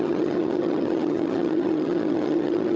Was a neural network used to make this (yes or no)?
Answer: yes